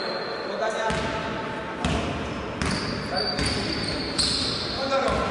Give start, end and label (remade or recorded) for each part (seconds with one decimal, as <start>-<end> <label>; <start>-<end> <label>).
0.0-5.3 recorded